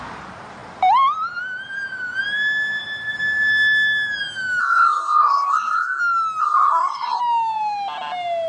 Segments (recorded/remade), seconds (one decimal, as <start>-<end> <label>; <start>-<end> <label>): 0.0-4.6 recorded; 4.6-6.0 remade; 6.0-6.4 recorded; 6.4-7.2 remade; 7.2-8.5 recorded